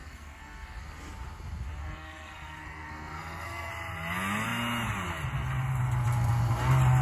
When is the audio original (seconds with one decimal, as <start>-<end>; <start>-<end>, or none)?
0.8-1.8; 3.7-7.0